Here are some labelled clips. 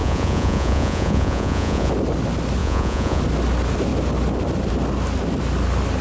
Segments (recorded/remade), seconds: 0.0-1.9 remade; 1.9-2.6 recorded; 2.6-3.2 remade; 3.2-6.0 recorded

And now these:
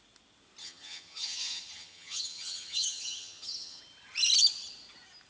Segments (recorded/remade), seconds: 0.0-0.6 recorded; 0.6-3.8 remade; 3.8-5.3 recorded

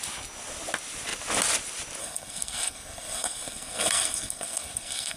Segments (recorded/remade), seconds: 0.0-2.0 recorded; 2.0-5.2 remade

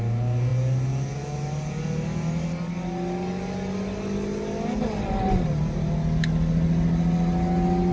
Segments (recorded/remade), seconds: 0.0-7.9 recorded

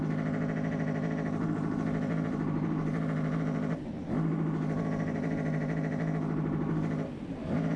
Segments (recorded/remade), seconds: 0.0-7.8 recorded

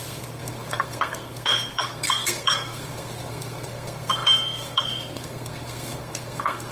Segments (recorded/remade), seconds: 0.0-6.7 remade

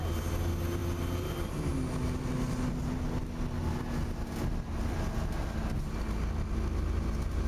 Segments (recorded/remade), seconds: 0.0-7.5 recorded

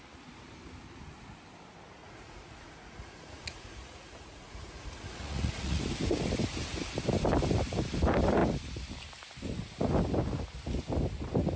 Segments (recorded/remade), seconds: 0.0-2.0 recorded; 2.0-5.8 remade; 5.8-11.6 recorded